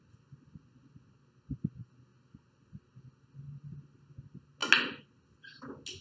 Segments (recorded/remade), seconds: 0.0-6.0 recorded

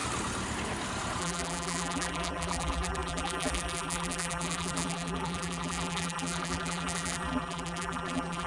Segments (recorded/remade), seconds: 0.0-1.2 recorded; 1.2-8.5 remade

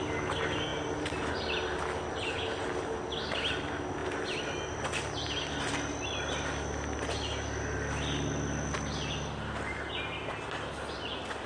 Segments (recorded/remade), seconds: 0.0-11.5 recorded

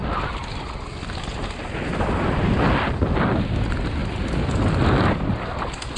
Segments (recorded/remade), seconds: 0.0-6.0 recorded

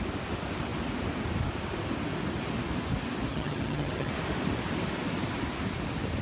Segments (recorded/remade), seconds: 0.0-3.3 recorded; 3.3-4.1 remade; 4.1-6.2 recorded

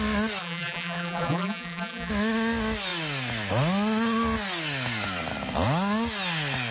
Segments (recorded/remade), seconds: 0.0-0.4 recorded; 0.4-2.1 remade; 2.1-6.7 recorded

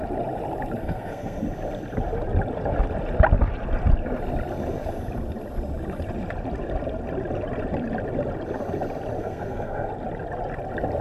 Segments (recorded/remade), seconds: 0.0-0.8 recorded; 0.8-1.4 remade; 1.4-9.2 recorded; 9.2-9.9 remade; 9.9-11.0 recorded